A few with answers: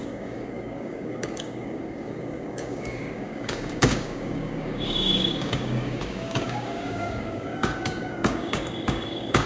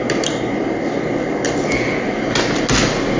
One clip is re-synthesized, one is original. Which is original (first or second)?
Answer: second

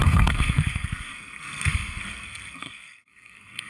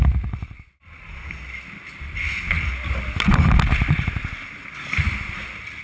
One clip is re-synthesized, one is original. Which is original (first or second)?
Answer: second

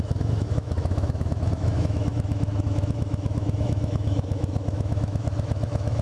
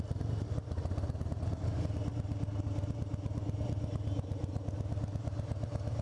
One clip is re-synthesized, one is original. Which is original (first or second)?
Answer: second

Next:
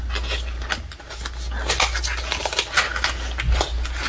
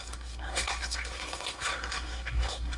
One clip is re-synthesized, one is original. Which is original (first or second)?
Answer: first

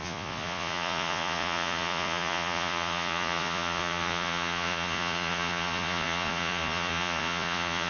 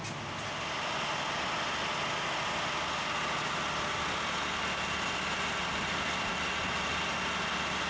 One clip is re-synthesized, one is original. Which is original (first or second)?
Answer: second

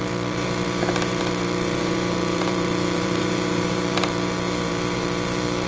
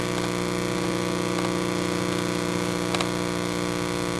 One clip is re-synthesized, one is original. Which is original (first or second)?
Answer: second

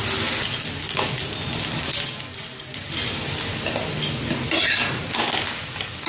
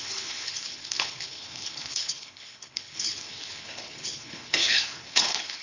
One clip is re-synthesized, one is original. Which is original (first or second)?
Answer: first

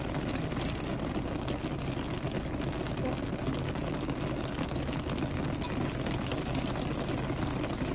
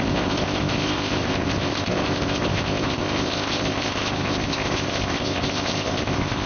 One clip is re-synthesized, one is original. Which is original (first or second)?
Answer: first